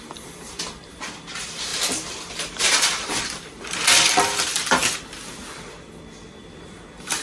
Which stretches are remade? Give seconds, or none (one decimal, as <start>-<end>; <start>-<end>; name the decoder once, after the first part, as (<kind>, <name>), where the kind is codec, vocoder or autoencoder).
0.0-1.7 (vocoder, BigVGAN v2); 2.6-4.8; 6.4-7.2